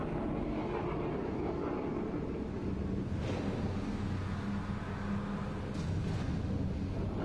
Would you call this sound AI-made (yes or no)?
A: no